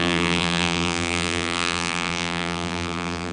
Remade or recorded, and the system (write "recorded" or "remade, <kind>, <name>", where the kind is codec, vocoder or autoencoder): remade, vocoder, BigVGAN v2